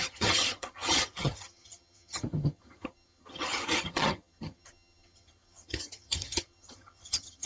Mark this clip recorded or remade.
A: remade